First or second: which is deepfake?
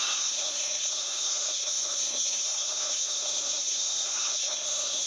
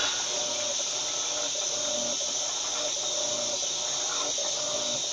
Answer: first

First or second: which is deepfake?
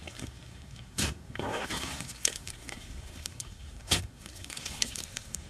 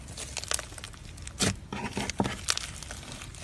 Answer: first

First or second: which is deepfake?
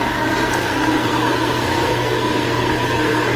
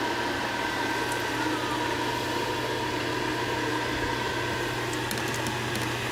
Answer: first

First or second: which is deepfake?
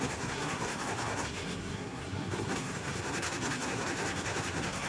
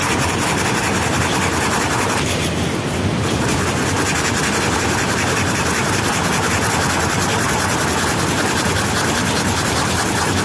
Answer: first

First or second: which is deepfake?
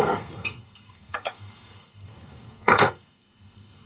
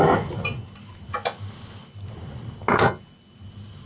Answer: first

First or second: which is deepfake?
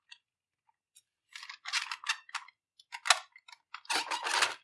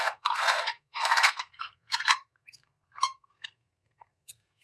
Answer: second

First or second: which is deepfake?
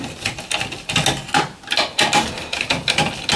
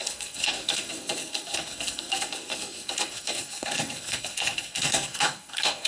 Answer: second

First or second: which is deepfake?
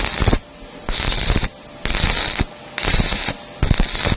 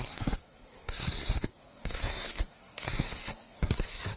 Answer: second